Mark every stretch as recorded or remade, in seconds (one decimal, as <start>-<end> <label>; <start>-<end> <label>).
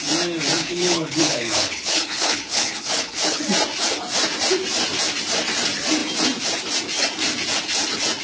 0.0-0.6 recorded; 0.6-3.4 remade; 3.4-8.2 recorded